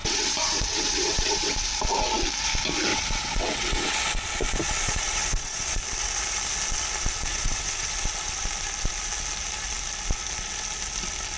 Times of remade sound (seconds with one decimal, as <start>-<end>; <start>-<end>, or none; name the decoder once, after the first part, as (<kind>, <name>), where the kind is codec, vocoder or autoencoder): 0.0-1.7 (vocoder, WaveNeXt); 2.9-5.8; 7.3-7.9